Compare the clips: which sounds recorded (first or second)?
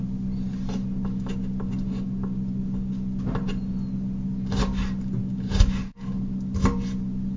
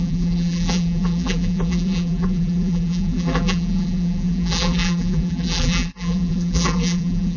first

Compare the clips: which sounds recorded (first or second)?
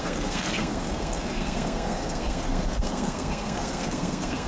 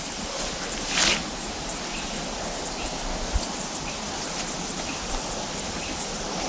second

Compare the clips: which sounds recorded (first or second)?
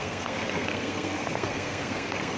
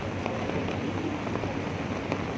second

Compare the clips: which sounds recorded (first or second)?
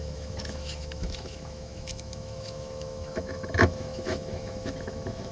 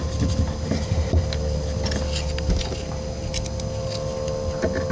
second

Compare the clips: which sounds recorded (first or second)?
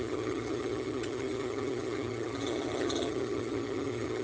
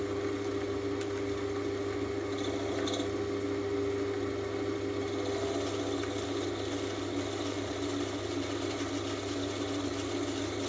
second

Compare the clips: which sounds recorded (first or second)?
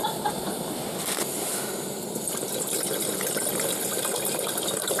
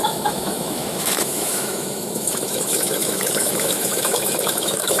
first